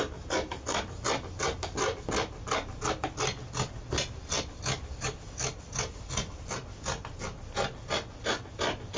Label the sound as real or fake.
real